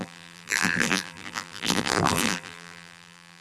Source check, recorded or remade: remade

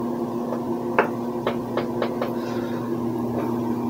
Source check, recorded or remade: recorded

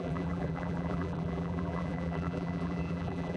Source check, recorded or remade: remade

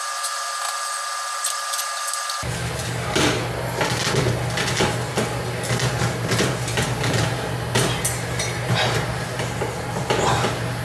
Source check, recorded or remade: recorded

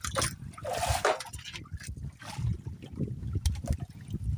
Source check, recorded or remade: recorded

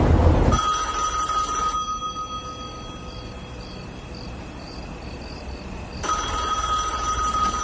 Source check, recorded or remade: recorded